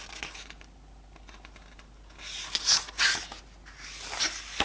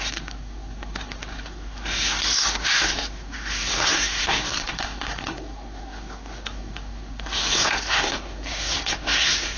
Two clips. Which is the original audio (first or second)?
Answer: first